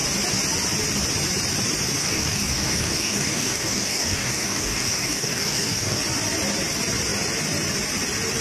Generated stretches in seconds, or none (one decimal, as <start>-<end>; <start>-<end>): 2.0-6.0

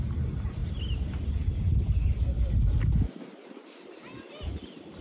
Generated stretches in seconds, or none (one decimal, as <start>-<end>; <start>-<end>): none

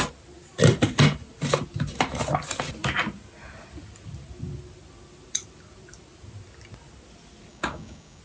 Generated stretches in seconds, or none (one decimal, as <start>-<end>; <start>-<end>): 7.5-8.2

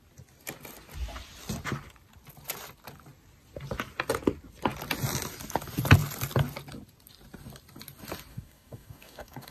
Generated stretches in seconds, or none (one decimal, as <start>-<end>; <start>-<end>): 8.3-9.5

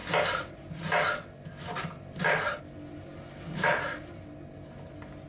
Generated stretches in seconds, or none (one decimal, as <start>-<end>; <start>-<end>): none

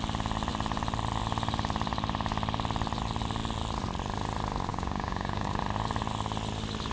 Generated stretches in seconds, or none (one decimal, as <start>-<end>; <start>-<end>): 4.7-5.6